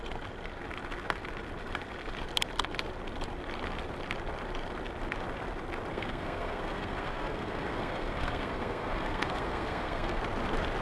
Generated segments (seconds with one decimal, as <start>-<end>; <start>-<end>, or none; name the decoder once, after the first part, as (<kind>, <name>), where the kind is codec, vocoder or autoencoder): 5.9-10.2 (codec, SNAC)